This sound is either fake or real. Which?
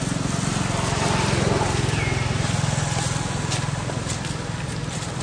real